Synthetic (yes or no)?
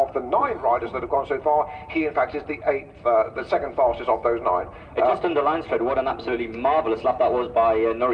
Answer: no